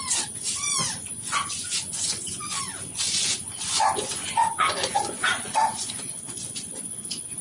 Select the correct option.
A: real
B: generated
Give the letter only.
B